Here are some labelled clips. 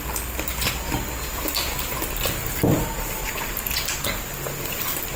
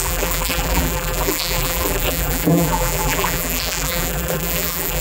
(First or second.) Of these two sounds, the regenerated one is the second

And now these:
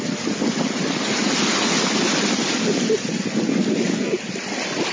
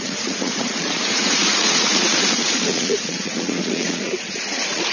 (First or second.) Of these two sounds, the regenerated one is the second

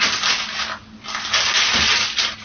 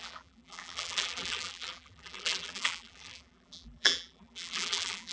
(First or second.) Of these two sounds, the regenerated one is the second